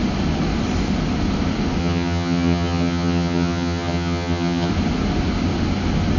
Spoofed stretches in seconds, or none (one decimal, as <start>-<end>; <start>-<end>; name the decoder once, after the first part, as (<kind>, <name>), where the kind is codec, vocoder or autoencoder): 1.8-4.7 (vocoder, HiFi-GAN)